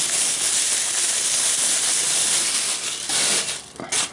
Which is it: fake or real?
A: real